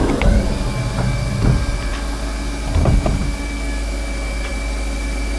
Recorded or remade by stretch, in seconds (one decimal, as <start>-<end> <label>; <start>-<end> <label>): 0.0-5.4 recorded